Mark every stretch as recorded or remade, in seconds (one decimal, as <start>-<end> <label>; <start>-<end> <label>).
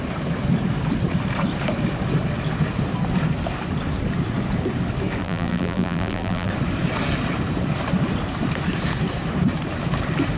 0.0-5.2 recorded; 5.2-6.5 remade; 6.5-10.4 recorded